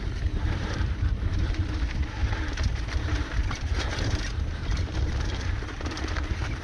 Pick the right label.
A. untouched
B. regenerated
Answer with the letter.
B